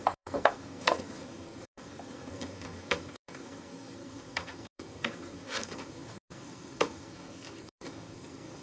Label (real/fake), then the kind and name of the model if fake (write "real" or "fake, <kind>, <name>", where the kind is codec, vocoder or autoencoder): fake, codec, SNAC